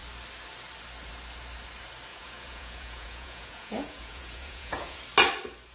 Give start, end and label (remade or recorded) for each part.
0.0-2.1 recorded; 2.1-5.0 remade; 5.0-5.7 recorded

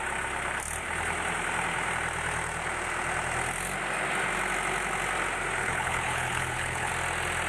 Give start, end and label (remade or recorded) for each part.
0.0-5.6 recorded; 5.6-6.9 remade; 6.9-7.5 recorded

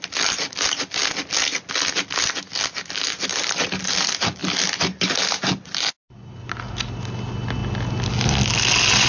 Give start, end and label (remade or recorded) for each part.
0.0-9.1 recorded